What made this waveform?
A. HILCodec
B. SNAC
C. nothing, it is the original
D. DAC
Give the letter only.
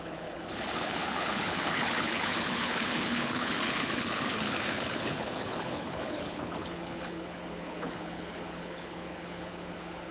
A